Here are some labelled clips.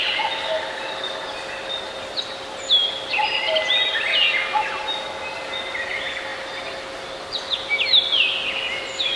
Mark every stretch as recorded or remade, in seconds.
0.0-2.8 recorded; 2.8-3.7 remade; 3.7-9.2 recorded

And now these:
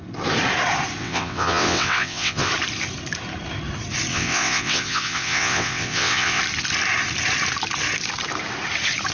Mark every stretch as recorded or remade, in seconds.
0.0-1.0 recorded; 1.0-2.5 remade; 2.5-4.1 recorded; 4.1-6.4 remade; 6.4-9.1 recorded

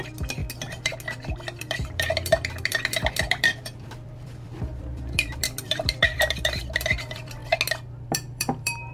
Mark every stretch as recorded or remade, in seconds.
0.0-0.4 remade; 0.4-1.6 recorded; 1.6-7.4 remade; 7.4-8.1 recorded; 8.1-8.9 remade

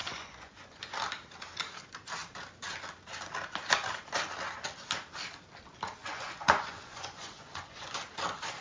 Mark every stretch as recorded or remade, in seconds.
0.0-0.8 remade; 0.8-6.0 recorded; 6.0-8.0 remade; 8.0-8.6 recorded

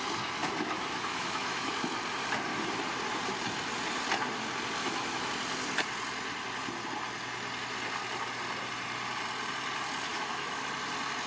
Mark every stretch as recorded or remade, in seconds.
0.0-0.4 recorded; 0.4-1.7 remade; 1.7-4.8 recorded; 4.8-5.3 remade; 5.3-10.1 recorded; 10.1-10.6 remade; 10.6-11.3 recorded

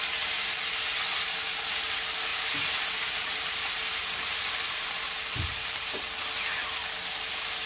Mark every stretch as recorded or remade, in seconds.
0.0-2.3 recorded; 2.3-6.0 remade; 6.0-7.7 recorded

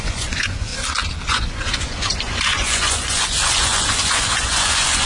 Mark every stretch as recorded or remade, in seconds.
0.0-0.7 remade; 0.7-1.3 recorded; 1.3-5.1 remade